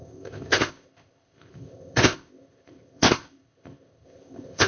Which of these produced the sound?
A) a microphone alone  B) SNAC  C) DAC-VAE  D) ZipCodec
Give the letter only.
D